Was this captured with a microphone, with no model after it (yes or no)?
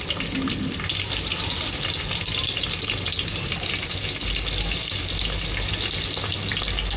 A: yes